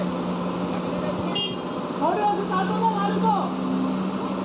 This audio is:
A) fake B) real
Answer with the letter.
B